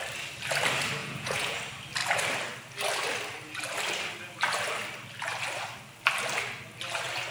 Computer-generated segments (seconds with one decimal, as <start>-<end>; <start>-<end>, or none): 1.0-1.6